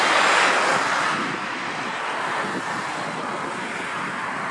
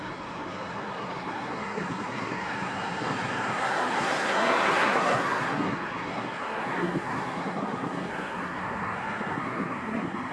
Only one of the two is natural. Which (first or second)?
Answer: first